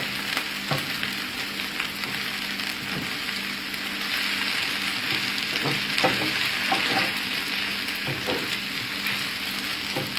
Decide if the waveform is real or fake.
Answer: real